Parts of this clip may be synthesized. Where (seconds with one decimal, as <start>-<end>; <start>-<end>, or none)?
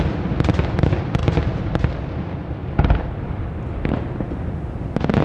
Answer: none